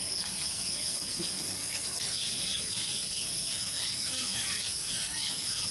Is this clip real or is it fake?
fake